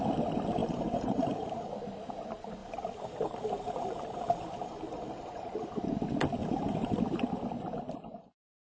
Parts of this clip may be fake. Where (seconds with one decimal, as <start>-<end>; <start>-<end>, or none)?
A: 0.6-1.7; 2.6-5.8; 6.4-7.0